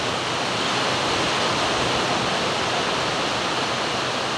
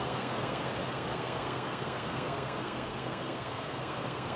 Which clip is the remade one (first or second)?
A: second